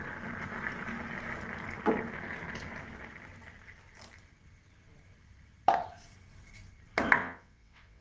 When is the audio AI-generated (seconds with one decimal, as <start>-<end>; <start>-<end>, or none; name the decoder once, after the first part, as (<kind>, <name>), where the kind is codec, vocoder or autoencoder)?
7.2-8.0 (vocoder, WaveNeXt)